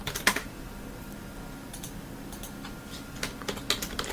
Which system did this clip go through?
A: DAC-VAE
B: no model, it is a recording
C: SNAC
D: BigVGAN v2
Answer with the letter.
B